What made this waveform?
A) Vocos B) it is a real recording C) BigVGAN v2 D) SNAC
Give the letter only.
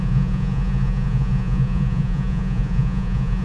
A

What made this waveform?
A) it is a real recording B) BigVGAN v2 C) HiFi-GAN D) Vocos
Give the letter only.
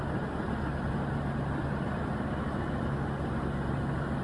A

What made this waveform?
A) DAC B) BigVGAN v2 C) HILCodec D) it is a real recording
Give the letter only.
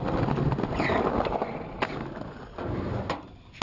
D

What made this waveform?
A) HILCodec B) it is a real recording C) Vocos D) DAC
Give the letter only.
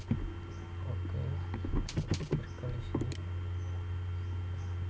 B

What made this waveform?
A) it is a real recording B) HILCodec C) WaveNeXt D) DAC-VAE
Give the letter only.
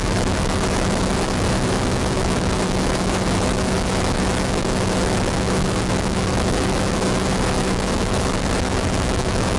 D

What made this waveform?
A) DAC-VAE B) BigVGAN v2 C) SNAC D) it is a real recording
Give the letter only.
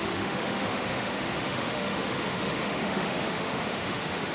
A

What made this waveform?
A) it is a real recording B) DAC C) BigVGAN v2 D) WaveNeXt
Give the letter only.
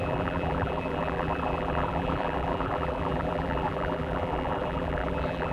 C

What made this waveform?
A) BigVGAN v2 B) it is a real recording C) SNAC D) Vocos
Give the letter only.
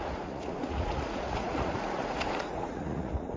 D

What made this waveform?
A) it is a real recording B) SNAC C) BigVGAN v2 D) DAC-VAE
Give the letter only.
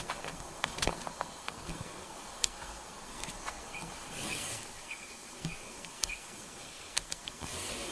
B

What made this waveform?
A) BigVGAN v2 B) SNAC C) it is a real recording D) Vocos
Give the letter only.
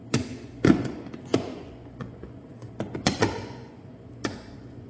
D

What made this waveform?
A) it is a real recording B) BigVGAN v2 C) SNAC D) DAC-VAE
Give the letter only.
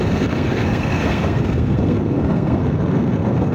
C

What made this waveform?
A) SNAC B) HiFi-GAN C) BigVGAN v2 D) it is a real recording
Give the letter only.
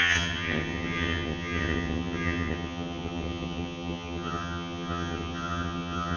B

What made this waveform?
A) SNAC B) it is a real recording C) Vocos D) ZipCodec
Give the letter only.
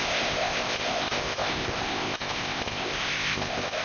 D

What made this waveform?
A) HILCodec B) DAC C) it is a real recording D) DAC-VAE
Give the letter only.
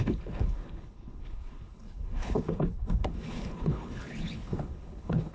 A